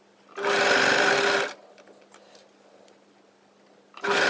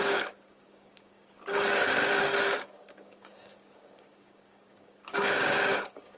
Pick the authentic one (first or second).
first